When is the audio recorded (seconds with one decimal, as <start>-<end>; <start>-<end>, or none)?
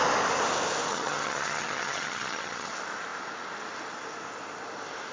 0.0-0.9; 2.7-5.1